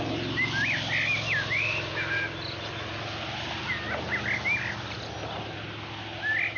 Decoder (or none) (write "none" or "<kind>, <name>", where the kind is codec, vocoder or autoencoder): none